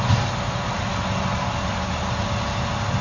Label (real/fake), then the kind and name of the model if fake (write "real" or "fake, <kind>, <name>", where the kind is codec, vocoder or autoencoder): real